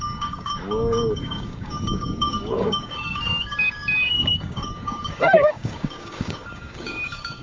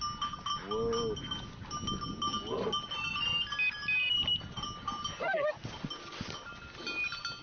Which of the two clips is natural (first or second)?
second